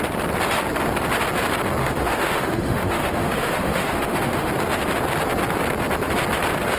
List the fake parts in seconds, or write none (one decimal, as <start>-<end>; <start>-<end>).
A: 1.8-4.5